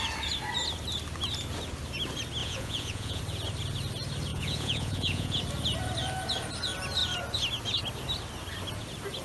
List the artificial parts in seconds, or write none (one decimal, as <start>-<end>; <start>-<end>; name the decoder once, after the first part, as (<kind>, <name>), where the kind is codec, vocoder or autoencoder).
2.4-3.2 (vocoder, Vocos); 4.3-5.4